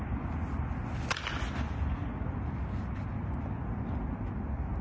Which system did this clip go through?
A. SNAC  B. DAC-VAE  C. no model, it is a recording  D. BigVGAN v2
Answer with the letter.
C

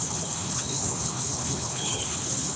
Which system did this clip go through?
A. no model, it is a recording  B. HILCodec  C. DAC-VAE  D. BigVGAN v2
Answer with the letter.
B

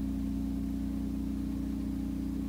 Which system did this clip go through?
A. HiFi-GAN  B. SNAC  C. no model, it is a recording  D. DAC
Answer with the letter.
C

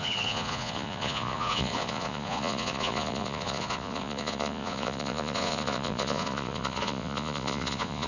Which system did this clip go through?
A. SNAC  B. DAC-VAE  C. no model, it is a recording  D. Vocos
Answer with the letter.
D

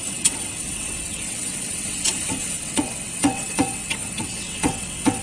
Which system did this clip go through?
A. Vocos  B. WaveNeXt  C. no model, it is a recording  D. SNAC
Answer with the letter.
B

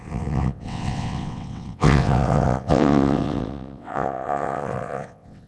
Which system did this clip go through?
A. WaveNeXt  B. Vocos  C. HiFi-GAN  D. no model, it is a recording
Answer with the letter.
A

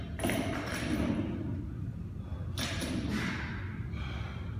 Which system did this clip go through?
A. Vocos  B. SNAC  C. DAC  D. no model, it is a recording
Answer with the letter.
D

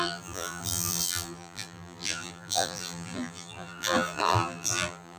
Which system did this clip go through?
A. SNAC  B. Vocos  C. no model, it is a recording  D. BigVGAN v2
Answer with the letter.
D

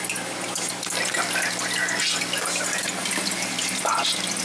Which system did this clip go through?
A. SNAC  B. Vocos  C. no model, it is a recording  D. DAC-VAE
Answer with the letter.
C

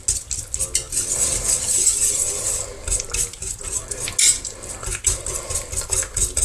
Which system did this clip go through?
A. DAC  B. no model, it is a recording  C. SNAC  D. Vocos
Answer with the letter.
B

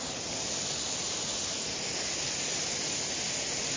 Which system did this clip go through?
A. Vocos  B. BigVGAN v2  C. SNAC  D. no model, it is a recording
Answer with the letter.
D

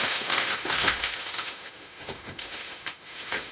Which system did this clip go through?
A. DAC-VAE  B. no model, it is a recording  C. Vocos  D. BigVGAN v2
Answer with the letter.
A